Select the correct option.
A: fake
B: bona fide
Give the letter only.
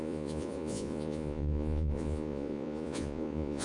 A